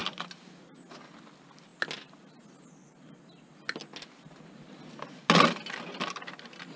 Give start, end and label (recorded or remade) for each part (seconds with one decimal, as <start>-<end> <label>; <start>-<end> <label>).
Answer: 0.0-6.8 recorded